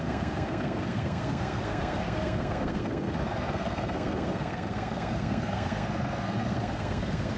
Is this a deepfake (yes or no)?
yes